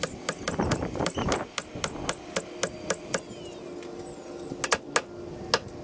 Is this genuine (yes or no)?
yes